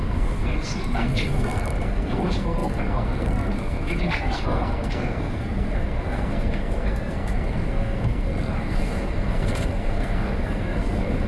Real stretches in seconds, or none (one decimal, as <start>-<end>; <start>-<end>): none